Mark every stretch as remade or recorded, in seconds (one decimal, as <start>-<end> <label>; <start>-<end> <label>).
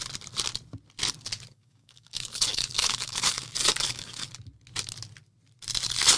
0.0-1.5 recorded; 1.5-4.3 remade; 4.3-6.2 recorded